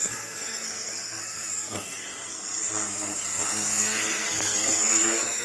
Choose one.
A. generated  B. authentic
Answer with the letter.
A